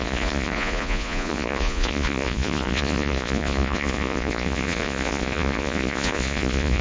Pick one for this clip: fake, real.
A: fake